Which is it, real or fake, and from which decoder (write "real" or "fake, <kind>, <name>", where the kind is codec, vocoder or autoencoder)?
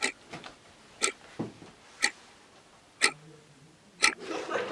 real